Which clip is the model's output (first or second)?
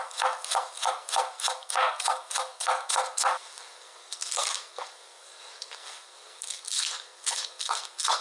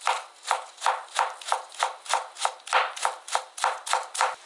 first